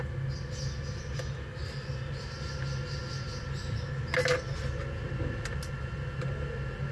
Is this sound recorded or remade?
recorded